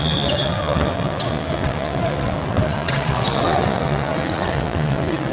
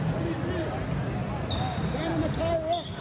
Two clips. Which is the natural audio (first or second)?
second